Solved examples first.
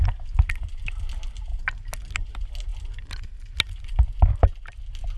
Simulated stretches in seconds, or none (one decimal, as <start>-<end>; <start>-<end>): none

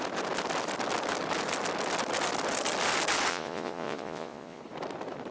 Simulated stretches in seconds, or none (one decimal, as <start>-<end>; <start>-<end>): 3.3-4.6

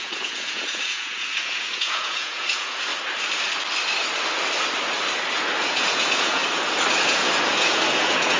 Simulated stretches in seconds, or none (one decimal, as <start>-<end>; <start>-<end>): 0.0-2.9; 5.6-6.4; 7.0-8.4

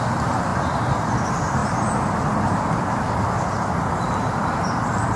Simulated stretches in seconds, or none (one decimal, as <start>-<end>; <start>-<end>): none